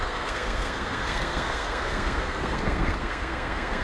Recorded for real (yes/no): no